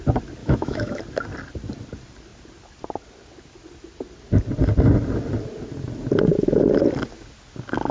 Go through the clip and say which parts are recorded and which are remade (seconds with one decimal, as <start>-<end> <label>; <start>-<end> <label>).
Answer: 0.0-0.4 recorded; 0.4-1.0 remade; 1.0-7.9 recorded

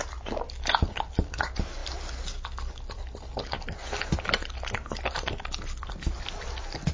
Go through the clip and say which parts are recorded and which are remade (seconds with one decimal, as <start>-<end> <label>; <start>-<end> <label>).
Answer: 0.0-6.9 recorded